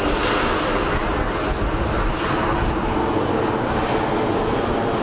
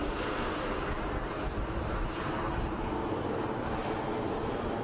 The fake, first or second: second